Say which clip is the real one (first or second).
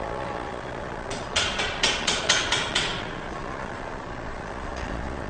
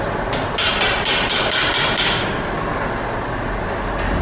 second